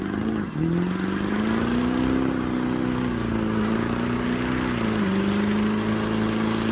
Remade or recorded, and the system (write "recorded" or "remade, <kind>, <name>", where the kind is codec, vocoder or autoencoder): recorded